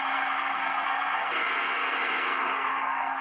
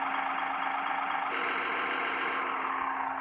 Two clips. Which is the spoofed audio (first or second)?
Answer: first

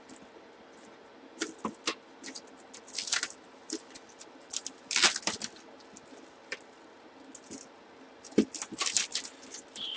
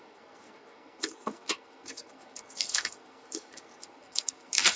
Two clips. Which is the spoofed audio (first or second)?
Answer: second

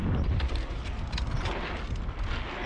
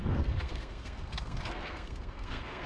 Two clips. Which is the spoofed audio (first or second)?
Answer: second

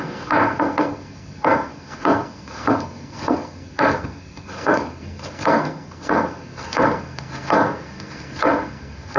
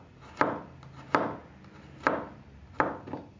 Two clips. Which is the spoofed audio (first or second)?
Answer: first